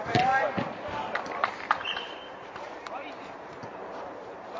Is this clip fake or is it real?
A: fake